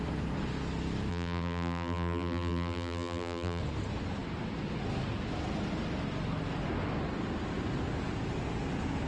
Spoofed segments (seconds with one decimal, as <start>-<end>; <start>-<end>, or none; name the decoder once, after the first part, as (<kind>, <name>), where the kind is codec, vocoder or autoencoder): 1.1-3.6 (vocoder, BigVGAN v2)